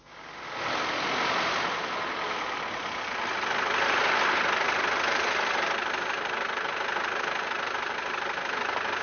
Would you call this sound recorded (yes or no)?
yes